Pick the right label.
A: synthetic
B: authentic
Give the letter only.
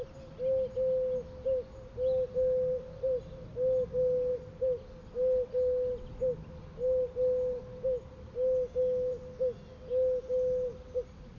B